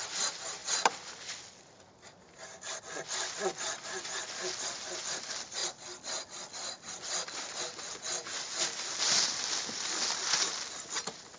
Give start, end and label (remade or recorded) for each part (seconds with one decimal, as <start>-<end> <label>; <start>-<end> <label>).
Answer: 0.0-11.4 recorded